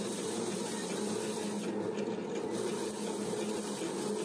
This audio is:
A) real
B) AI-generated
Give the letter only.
A